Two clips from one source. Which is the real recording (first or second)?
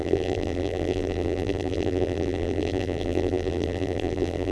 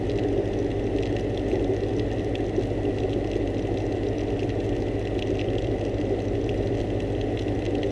second